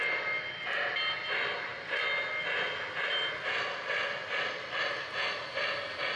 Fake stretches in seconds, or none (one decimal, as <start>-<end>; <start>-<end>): none